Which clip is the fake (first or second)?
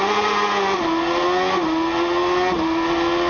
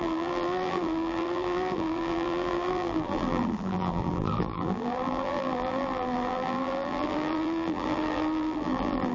second